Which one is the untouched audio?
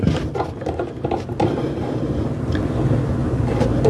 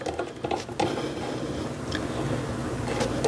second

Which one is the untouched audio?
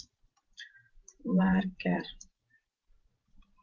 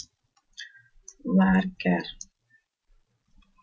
second